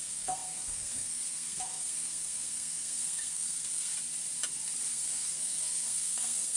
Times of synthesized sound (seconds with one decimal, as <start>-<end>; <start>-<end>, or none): 0.0-3.9; 4.9-6.6

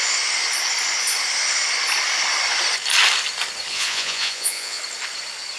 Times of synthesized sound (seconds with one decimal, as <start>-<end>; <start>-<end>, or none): 3.7-4.8

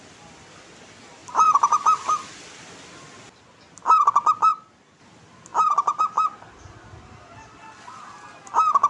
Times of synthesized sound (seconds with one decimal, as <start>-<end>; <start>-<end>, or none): 1.2-1.7; 4.5-5.0

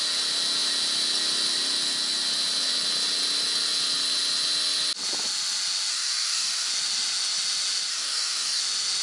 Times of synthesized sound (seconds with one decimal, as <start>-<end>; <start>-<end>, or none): 5.9-6.7; 7.9-8.6

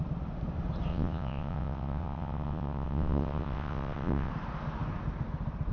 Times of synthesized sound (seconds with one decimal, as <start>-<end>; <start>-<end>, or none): 0.9-4.3

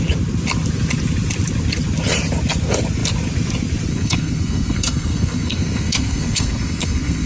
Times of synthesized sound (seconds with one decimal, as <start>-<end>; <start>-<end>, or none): 3.9-7.3

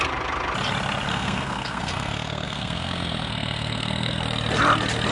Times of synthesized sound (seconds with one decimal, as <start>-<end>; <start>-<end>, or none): 1.1-4.2

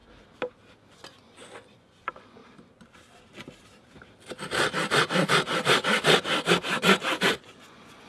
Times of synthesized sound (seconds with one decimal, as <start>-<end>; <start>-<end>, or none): 0.8-2.4; 6.5-8.1